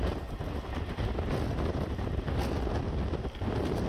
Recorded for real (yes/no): yes